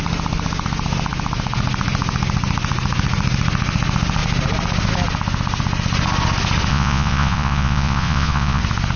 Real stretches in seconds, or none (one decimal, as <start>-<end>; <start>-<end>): 0.0-6.7; 8.6-9.0